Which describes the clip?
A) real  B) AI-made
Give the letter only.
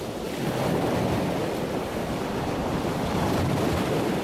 A